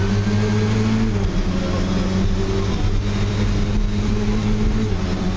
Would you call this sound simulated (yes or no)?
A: no